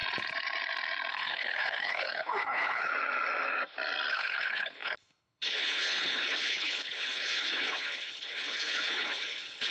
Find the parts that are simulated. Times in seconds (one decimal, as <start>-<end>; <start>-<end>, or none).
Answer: 1.1-2.9; 4.1-9.7